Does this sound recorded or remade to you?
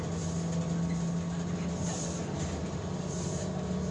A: recorded